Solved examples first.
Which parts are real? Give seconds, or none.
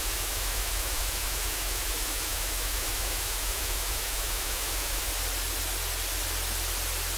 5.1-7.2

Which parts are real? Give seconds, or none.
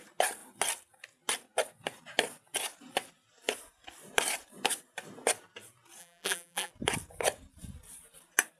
0.0-6.0; 6.7-8.6